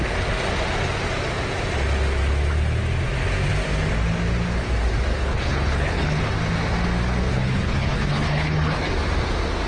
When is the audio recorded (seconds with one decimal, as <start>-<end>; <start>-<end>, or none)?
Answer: 0.0-5.1; 6.2-7.3; 8.9-9.7